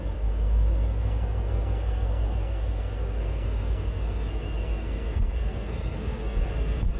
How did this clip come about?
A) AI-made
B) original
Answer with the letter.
A